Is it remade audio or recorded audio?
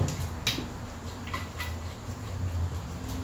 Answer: recorded